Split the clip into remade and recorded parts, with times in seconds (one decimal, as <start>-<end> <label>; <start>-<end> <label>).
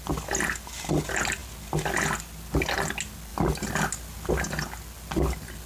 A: 0.0-5.7 recorded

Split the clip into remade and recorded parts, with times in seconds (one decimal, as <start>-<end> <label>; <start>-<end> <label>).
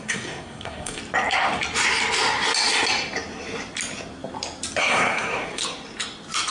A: 0.0-1.0 remade; 1.0-4.8 recorded; 4.8-5.6 remade; 5.6-6.5 recorded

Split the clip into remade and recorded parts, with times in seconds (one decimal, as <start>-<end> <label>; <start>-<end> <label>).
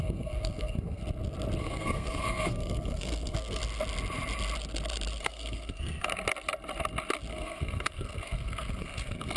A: 0.0-1.0 remade; 1.0-1.6 recorded; 1.6-3.6 remade; 3.6-5.2 recorded; 5.2-6.1 remade; 6.1-7.3 recorded; 7.3-9.4 remade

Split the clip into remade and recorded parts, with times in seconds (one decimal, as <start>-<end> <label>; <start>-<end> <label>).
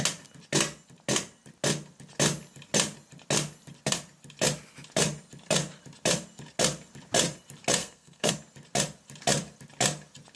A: 0.0-7.8 recorded; 7.8-8.3 remade; 8.3-10.4 recorded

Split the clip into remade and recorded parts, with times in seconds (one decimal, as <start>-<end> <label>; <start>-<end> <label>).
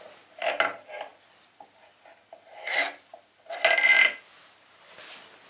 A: 0.0-5.5 recorded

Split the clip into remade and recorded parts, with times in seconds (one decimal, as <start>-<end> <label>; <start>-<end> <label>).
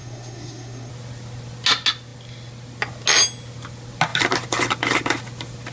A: 0.0-0.9 remade; 0.9-5.7 recorded